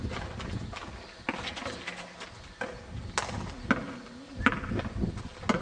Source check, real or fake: real